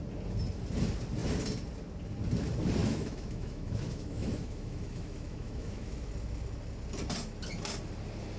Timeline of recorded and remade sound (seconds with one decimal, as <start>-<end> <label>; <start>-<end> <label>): 0.0-2.8 recorded; 2.8-6.1 remade; 6.1-8.4 recorded